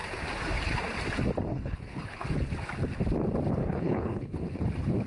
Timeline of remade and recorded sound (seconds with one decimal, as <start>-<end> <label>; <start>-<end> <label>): 0.0-1.5 recorded; 1.5-2.3 remade; 2.3-3.6 recorded; 3.6-4.6 remade; 4.6-5.1 recorded